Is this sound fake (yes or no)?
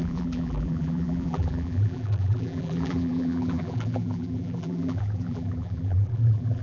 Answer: yes